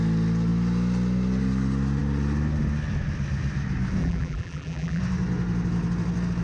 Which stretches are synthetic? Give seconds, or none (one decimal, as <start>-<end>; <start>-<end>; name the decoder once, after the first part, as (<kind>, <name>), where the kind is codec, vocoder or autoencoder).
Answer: 4.0-5.0 (vocoder, BigVGAN v2)